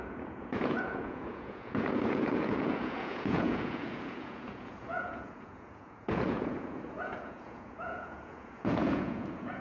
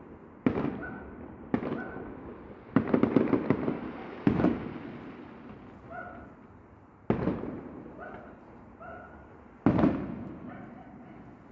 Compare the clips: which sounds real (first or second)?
second